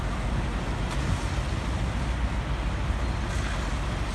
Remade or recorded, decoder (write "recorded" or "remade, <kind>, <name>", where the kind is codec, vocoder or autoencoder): recorded